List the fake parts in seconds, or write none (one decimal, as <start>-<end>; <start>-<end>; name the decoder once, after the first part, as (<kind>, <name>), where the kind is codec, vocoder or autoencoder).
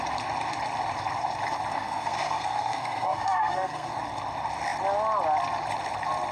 1.7-3.9 (codec, SNAC)